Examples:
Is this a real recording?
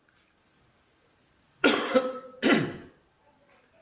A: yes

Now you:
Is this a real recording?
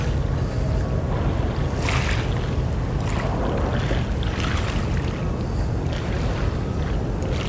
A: yes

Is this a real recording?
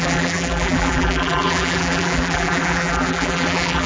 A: no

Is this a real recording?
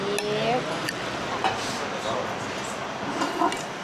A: yes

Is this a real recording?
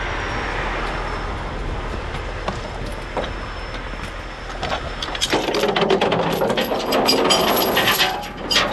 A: yes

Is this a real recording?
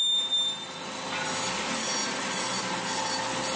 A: yes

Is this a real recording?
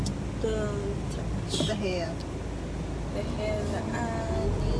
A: yes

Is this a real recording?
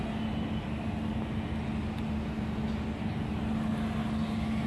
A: yes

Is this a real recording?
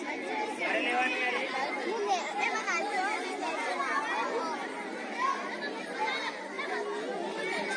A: yes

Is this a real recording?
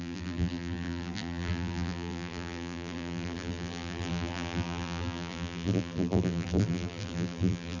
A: no